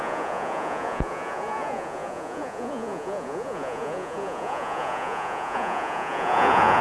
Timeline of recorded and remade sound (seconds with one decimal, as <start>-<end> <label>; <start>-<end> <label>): 0.0-6.8 remade